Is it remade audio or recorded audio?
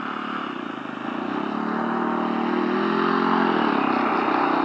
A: recorded